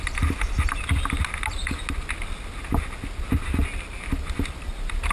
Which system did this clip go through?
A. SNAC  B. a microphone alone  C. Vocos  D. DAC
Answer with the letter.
B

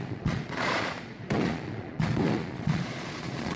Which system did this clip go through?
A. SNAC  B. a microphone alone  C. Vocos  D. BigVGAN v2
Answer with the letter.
C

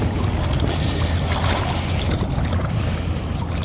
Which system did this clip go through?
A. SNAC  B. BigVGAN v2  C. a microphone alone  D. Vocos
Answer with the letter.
C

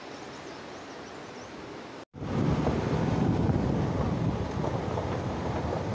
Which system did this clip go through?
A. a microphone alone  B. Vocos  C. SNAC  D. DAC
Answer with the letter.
A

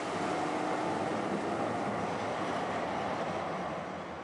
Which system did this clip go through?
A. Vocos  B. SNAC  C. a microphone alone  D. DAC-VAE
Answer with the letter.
C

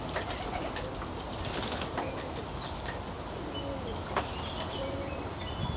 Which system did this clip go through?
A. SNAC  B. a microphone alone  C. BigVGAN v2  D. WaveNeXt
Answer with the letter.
B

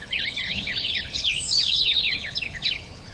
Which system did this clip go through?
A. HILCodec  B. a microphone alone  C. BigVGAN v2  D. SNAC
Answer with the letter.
A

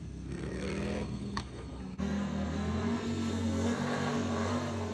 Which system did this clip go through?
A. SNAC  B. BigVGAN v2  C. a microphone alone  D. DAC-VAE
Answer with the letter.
A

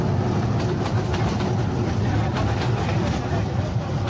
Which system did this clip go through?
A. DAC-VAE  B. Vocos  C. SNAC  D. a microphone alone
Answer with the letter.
D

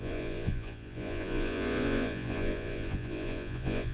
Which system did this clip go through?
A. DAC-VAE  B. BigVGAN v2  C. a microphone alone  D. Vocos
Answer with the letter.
D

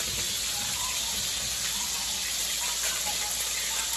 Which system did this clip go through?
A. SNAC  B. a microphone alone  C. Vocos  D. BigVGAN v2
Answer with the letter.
B